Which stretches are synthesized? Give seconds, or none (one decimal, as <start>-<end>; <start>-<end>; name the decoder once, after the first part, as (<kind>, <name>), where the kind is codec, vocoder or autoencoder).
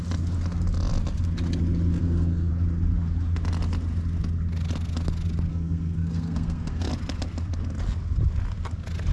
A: 2.0-2.5 (codec, SNAC); 5.5-6.9